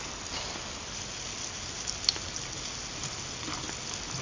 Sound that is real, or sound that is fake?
real